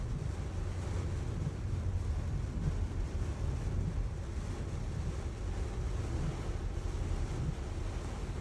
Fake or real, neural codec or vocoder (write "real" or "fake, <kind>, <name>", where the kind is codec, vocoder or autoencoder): real